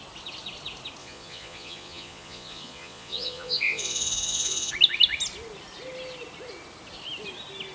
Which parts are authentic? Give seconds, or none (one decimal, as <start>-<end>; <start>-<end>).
0.0-1.0; 4.7-7.7